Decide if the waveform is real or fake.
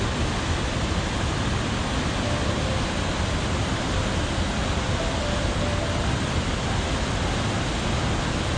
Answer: real